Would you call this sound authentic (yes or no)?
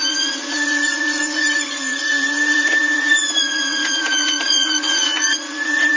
no